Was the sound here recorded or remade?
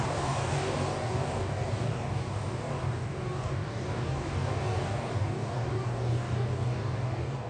remade